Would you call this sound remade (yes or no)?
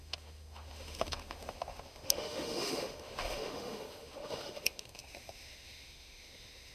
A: yes